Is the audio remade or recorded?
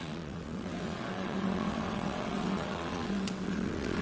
remade